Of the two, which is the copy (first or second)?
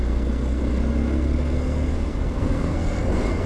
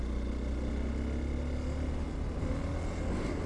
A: first